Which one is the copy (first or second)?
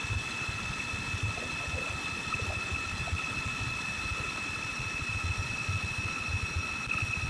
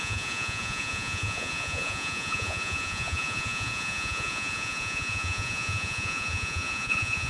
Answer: second